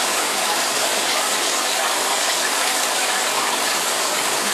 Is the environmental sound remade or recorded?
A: remade